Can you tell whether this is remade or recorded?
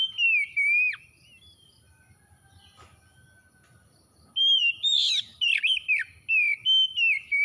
recorded